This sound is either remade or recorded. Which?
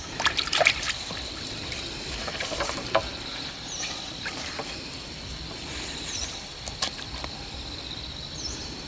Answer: remade